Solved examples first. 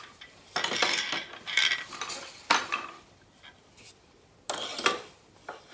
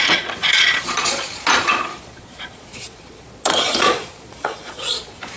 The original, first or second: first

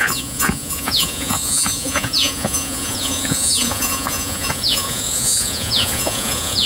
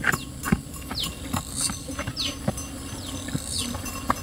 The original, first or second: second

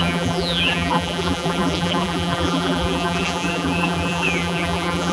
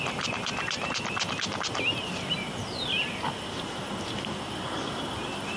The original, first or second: second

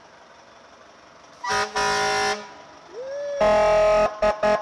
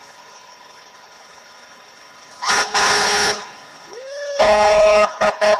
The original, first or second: first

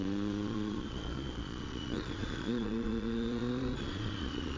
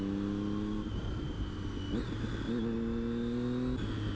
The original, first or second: second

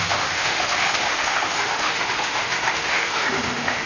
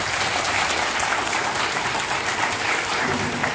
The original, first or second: second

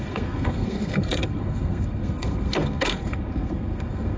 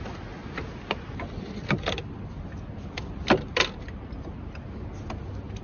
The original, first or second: second